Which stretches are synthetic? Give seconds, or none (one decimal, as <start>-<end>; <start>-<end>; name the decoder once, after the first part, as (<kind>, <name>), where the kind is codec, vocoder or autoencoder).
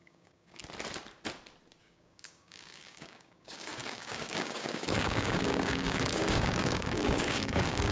0.0-0.6 (codec, DAC); 1.8-7.9